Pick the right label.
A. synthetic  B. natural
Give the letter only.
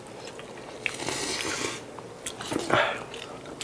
B